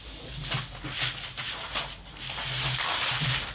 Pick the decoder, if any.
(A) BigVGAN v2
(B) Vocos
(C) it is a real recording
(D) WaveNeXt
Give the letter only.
C